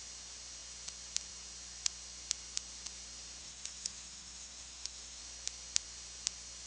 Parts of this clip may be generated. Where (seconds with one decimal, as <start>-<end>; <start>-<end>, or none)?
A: 3.4-5.2